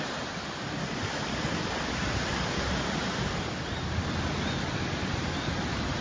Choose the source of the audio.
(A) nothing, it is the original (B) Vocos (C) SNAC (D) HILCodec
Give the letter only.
A